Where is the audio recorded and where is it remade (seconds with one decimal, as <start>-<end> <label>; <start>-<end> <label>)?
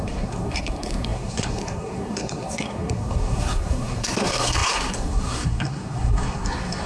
0.0-6.9 remade